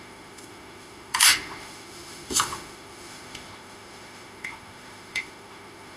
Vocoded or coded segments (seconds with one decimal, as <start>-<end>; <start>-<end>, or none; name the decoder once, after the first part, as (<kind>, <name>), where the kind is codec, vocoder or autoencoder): 0.0-6.0 (autoencoder, DAC-VAE)